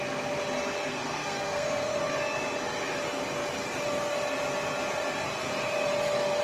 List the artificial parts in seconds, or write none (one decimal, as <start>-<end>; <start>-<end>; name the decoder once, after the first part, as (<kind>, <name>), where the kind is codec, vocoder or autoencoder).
0.9-2.0 (codec, SNAC)